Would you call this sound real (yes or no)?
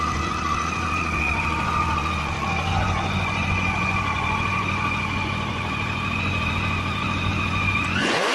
no